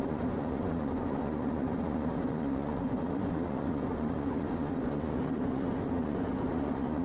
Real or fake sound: fake